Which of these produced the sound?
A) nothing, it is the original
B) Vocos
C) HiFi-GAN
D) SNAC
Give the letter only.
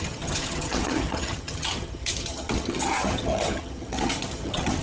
C